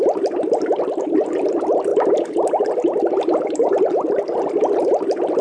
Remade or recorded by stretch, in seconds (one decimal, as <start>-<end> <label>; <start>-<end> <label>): 0.0-5.4 recorded